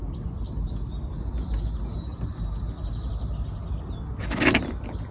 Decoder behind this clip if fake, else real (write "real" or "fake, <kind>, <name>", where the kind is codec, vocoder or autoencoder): real